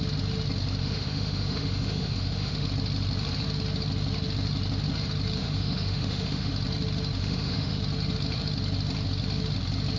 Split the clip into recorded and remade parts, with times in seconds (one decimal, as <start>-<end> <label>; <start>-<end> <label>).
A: 0.0-0.8 recorded; 0.8-2.7 remade; 2.7-5.4 recorded; 5.4-6.5 remade; 6.5-7.2 recorded; 7.2-7.8 remade; 7.8-10.0 recorded